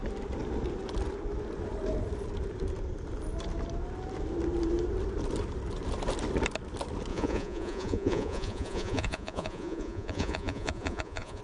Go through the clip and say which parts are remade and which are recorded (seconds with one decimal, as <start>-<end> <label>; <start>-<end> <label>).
0.0-7.1 recorded; 7.1-11.4 remade